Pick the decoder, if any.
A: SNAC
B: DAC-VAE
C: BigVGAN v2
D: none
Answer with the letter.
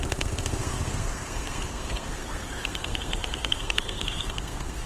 A